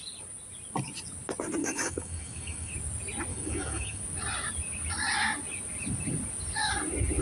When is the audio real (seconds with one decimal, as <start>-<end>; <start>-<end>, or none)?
0.0-1.6; 2.7-3.3; 4.0-7.2